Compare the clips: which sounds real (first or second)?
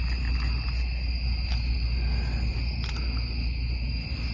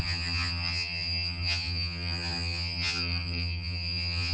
first